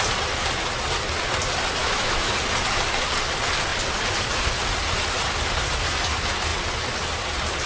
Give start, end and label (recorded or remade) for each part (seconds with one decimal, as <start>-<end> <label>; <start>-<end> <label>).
0.0-1.8 recorded; 1.8-2.3 remade; 2.3-7.7 recorded